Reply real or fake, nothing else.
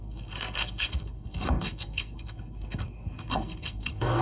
fake